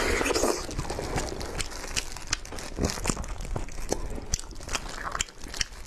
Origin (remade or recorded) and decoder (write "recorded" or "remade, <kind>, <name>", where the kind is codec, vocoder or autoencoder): recorded